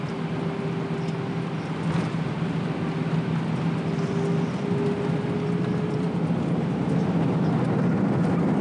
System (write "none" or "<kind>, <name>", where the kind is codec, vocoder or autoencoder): none